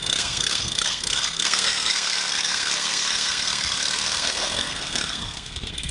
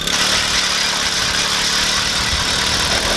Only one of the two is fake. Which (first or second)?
first